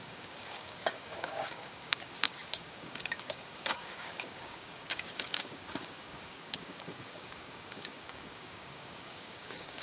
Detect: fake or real fake